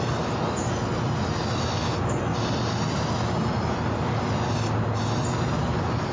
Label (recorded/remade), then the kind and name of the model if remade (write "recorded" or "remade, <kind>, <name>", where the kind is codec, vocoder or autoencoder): recorded